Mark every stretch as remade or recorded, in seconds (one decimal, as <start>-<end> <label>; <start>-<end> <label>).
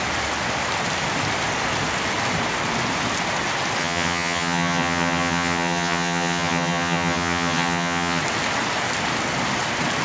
0.0-3.8 recorded; 3.8-8.2 remade; 8.2-10.0 recorded